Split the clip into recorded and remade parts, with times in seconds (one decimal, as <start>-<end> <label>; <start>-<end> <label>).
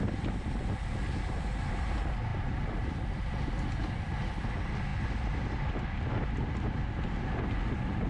0.0-2.3 recorded; 2.3-3.1 remade; 3.1-4.9 recorded; 4.9-5.7 remade; 5.7-8.1 recorded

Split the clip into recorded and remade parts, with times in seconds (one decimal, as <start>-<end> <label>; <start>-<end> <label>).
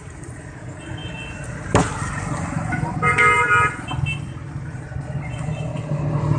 0.0-6.4 recorded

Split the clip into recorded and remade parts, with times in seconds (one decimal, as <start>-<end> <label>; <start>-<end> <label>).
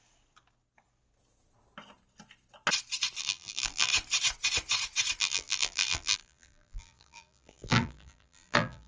0.0-3.2 recorded; 3.2-3.9 remade; 3.9-5.2 recorded; 5.2-8.9 remade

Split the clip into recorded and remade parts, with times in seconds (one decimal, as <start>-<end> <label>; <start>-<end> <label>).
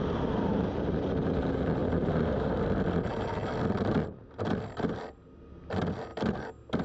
0.0-6.8 recorded